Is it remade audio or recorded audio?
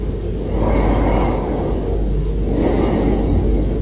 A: remade